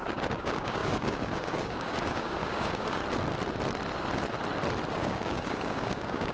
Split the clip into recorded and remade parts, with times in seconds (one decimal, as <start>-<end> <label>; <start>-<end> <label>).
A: 0.0-3.0 remade; 3.0-4.9 recorded; 4.9-6.3 remade